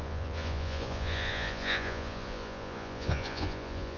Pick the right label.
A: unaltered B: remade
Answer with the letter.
B